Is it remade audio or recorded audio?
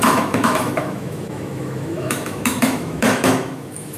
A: remade